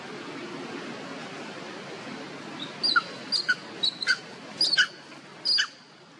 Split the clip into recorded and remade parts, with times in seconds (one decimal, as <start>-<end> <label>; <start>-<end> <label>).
0.0-6.2 recorded